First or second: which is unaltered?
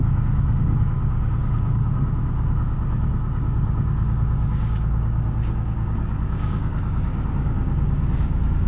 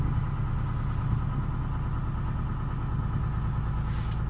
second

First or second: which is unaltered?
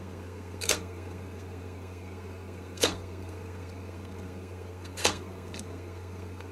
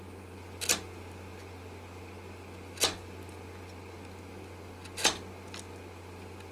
second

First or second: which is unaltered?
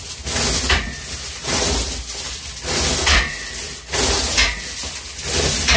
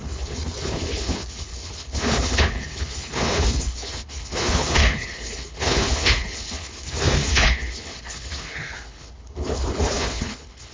first